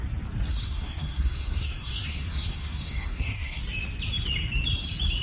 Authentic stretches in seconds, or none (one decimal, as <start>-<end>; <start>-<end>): 0.0-0.5; 3.6-5.2